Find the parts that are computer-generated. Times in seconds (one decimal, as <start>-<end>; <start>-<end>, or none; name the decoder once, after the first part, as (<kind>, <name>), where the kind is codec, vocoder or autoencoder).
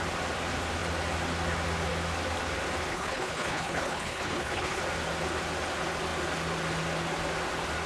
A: 2.9-4.8 (codec, HILCodec)